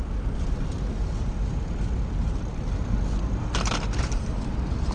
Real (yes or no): yes